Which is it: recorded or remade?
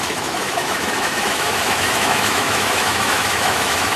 remade